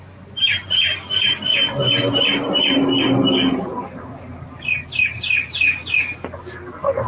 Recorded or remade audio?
recorded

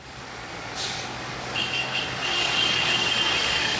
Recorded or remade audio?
remade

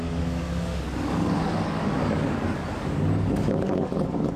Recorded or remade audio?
remade